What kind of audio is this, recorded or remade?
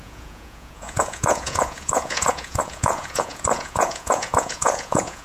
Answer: remade